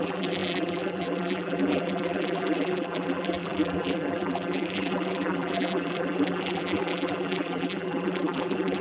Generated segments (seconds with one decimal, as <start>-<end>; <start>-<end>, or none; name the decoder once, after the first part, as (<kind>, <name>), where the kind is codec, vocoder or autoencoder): 0.0-8.8 (vocoder, BigVGAN v2)